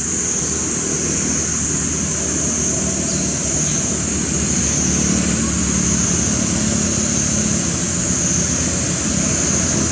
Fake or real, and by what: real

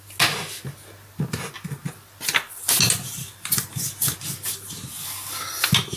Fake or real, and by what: real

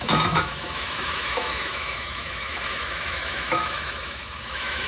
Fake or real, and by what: fake, autoencoder, DAC-VAE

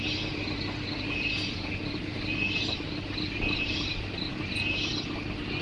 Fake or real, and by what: real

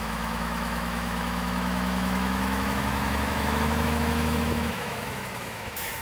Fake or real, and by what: fake, autoencoder, DAC-VAE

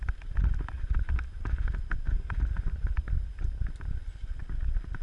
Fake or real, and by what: real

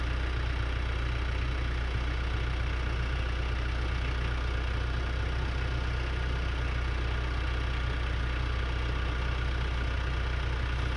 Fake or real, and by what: real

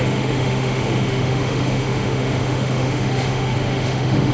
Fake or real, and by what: fake, autoencoder, DAC-VAE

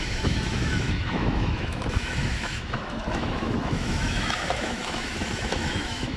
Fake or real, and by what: fake, autoencoder, DAC-VAE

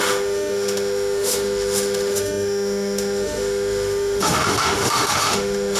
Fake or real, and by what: fake, autoencoder, DAC-VAE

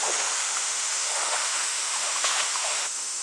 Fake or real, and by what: fake, autoencoder, DAC-VAE